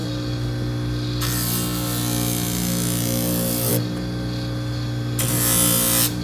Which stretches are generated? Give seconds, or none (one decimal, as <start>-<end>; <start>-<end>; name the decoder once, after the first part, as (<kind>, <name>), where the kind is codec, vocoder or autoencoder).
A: none